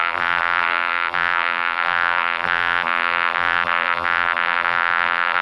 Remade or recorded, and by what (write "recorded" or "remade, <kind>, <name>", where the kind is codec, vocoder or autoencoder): remade, vocoder, BigVGAN v2